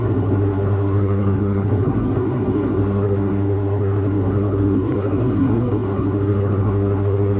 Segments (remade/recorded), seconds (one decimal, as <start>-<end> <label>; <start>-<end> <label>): 0.0-7.4 remade